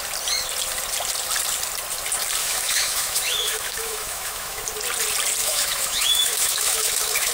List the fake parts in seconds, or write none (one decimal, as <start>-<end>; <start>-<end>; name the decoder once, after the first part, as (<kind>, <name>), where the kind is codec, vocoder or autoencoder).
2.4-4.6 (autoencoder, DAC-VAE); 5.4-7.3